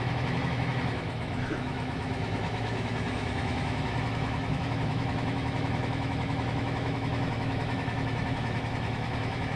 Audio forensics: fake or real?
fake